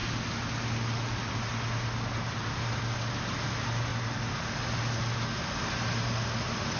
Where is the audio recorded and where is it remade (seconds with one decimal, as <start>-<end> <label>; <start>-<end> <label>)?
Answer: 0.0-6.8 recorded